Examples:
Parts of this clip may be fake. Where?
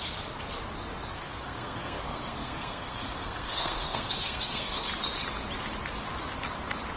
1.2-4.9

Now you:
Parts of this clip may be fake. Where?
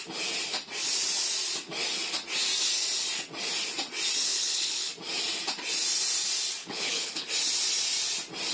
4.3-4.9; 6.6-7.3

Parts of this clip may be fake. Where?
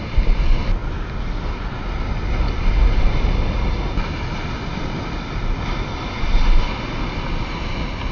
none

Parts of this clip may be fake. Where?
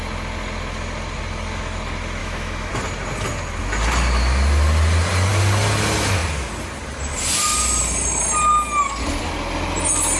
2.2-2.7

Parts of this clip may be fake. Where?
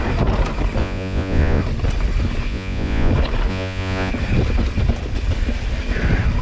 0.8-1.6; 2.5-3.1; 3.5-4.1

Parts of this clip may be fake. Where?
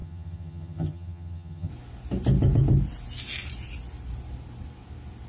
0.0-1.7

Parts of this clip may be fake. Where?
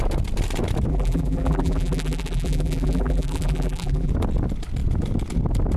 0.9-4.1